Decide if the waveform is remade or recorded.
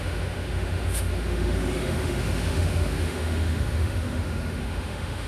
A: remade